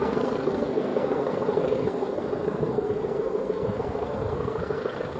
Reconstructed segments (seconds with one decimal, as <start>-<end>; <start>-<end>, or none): 0.0-5.2